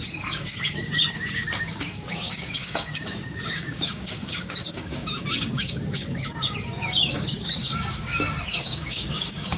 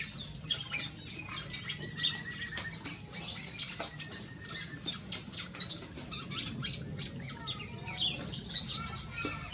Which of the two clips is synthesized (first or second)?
first